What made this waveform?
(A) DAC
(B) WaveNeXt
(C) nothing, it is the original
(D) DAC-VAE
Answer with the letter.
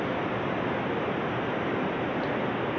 C